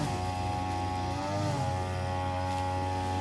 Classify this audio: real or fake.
real